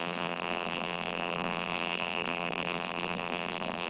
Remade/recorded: remade